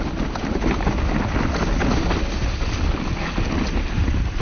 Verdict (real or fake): real